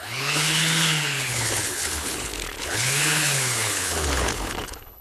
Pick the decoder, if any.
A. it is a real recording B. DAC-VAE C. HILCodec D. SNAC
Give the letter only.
C